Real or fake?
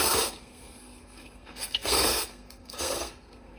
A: fake